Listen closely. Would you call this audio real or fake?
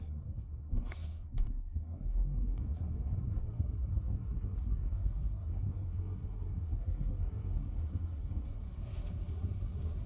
fake